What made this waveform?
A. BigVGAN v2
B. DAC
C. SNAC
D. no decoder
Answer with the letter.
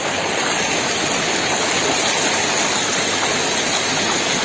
D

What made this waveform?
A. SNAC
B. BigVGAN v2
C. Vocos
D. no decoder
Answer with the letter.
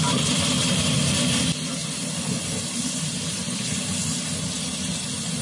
B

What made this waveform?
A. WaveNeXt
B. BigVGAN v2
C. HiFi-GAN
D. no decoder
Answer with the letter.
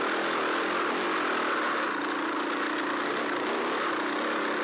D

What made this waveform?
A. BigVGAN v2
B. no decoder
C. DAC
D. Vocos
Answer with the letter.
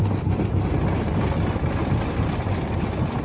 B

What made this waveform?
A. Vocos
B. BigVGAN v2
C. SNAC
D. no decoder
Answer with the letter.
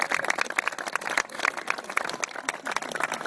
D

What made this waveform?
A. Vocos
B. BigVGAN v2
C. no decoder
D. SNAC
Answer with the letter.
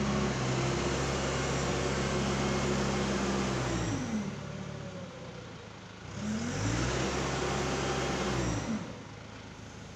C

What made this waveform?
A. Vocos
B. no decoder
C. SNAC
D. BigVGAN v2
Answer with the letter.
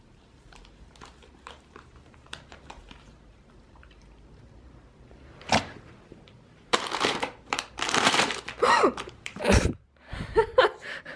D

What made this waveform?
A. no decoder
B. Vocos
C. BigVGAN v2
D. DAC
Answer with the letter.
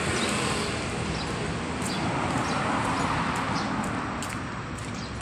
A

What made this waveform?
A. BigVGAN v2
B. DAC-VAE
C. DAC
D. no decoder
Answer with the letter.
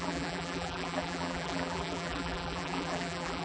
A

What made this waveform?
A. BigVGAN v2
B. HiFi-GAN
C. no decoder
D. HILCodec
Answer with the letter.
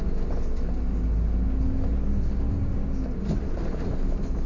C